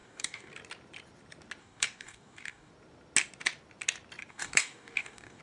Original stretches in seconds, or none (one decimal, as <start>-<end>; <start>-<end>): 0.5-1.6; 2.7-4.3